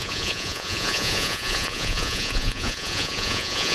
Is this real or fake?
fake